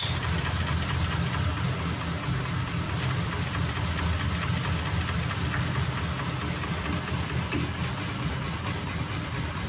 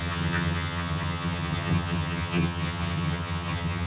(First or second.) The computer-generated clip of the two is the second